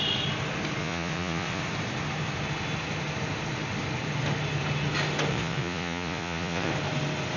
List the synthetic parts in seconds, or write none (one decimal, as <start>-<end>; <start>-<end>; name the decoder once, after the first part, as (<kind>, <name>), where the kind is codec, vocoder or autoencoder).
0.8-1.6 (vocoder, Vocos); 5.3-6.7